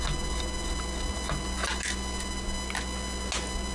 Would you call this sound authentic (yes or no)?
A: yes